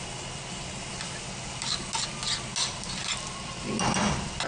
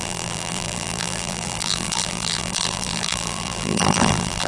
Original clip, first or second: first